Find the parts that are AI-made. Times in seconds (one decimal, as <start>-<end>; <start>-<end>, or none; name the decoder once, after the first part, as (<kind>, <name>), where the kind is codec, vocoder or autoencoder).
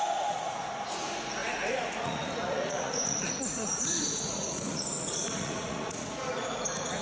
0.0-7.0 (vocoder, Vocos)